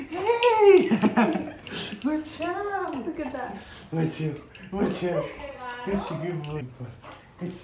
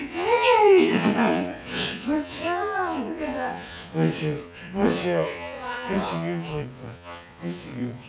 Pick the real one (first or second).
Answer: first